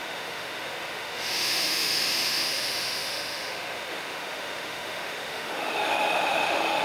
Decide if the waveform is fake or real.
fake